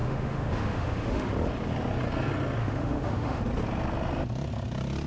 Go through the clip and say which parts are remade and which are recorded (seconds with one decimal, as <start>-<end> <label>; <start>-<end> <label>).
0.0-1.3 remade; 1.3-2.6 recorded; 2.6-3.4 remade; 3.4-5.1 recorded